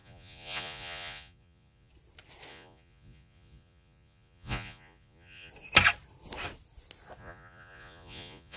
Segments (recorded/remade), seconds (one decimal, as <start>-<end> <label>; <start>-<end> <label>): 0.0-1.9 remade; 1.9-2.5 recorded; 2.5-5.5 remade; 5.5-7.2 recorded; 7.2-8.6 remade